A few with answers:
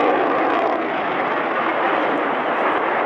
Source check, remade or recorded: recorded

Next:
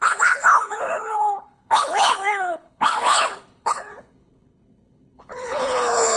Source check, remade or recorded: remade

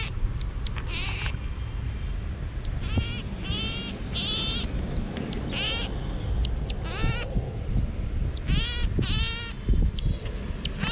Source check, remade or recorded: recorded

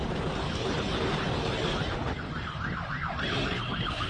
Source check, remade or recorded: recorded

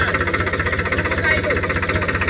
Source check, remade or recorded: recorded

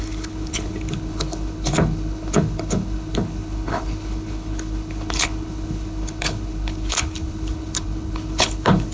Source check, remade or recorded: remade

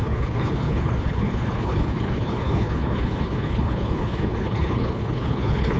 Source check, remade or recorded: remade